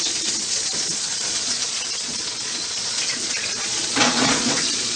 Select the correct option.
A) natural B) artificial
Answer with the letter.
B